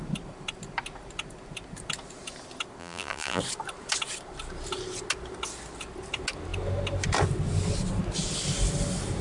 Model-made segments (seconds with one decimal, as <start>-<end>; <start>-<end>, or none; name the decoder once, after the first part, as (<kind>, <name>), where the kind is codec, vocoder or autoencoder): 2.8-3.4 (vocoder, BigVGAN v2)